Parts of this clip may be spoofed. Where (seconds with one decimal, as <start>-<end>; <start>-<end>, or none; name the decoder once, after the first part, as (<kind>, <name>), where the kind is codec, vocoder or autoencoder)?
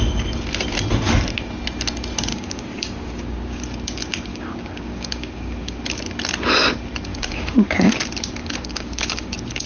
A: 2.3-3.6 (codec, DAC); 4.3-5.8; 7.1-7.9; 8.4-9.7